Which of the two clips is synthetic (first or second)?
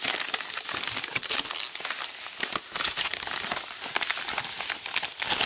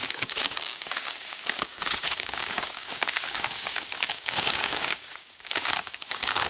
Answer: second